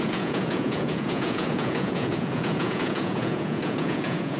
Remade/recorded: remade